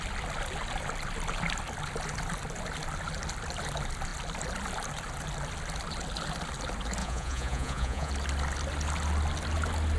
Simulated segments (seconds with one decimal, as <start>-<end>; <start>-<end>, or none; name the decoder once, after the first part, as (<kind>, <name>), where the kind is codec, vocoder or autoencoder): 7.0-8.1 (vocoder, Vocos)

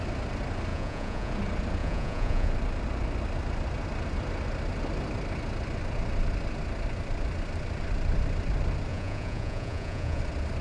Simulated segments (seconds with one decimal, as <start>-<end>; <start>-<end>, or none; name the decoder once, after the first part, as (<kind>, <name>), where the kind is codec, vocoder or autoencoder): 0.7-1.3 (vocoder, Vocos); 1.8-2.5; 8.9-10.2